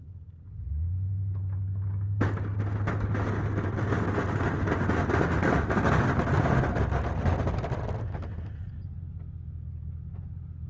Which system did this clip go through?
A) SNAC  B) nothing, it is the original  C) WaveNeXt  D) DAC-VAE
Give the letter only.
B